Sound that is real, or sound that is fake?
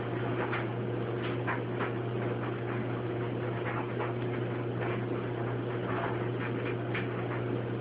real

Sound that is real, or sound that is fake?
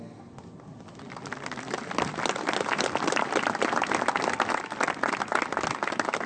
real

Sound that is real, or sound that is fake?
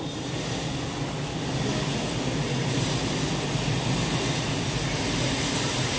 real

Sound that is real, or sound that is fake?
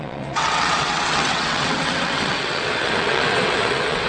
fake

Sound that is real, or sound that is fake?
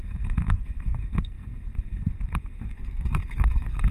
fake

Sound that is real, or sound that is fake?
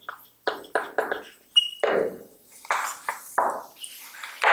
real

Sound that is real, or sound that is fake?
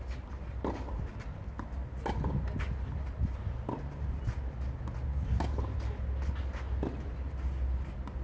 real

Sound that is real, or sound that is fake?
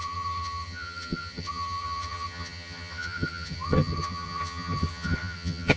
fake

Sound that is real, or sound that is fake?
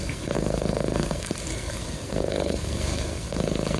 fake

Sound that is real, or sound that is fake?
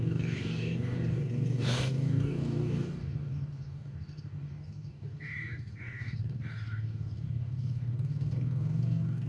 fake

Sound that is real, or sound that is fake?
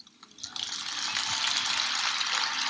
real